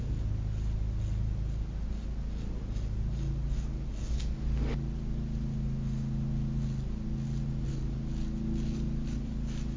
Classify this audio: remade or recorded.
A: recorded